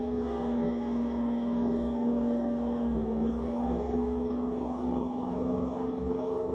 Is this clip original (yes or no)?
no